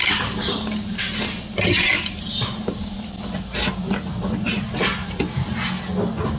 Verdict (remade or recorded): recorded